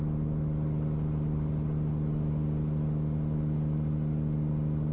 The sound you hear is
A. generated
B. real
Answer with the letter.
B